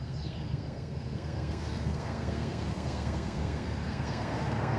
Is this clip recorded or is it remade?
remade